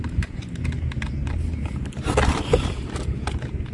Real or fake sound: real